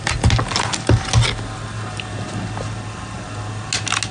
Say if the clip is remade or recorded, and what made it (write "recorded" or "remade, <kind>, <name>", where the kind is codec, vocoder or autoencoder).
recorded